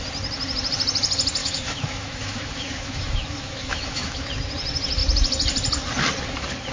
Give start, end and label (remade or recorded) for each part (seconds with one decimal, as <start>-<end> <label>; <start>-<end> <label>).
0.0-1.4 recorded; 1.4-4.3 remade; 4.3-6.7 recorded